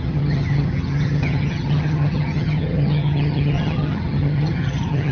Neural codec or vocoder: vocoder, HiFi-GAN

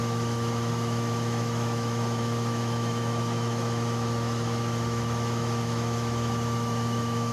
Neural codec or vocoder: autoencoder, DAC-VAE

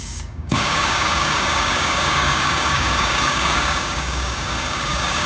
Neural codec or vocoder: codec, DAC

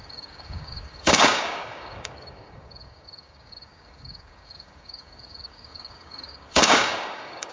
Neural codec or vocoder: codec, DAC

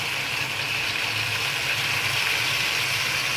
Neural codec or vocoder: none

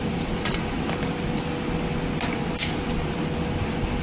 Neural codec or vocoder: none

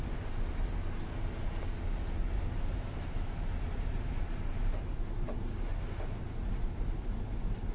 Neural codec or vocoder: none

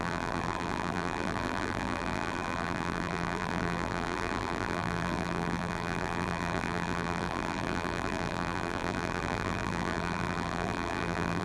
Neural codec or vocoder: vocoder, BigVGAN v2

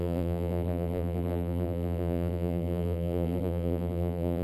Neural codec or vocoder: vocoder, BigVGAN v2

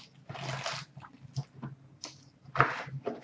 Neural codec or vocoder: none